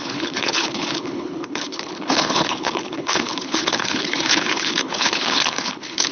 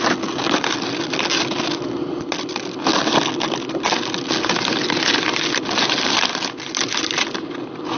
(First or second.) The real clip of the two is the second